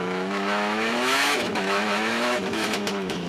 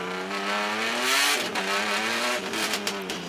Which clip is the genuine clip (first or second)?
second